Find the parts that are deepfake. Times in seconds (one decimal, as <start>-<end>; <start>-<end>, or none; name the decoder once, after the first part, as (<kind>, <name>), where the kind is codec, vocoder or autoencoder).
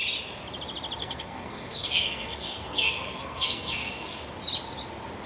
1.0-4.2 (codec, SNAC)